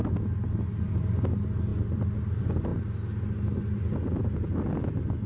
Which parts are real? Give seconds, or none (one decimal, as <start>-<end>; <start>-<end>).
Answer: 0.0-5.3